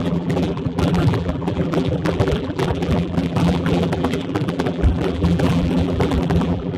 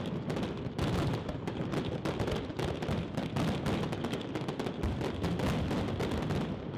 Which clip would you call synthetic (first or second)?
first